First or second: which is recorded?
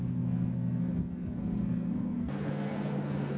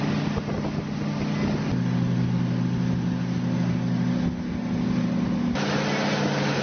second